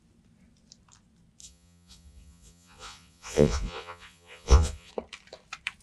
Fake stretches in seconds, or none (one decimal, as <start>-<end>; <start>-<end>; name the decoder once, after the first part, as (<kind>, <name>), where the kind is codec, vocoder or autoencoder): 1.4-4.9 (vocoder, Vocos)